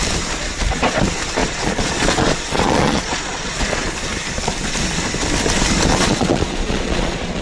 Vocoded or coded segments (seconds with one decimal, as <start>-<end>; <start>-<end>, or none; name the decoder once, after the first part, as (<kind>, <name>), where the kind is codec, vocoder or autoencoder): 1.4-3.9 (vocoder, Vocos); 5.9-7.4